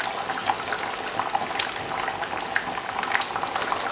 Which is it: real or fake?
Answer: real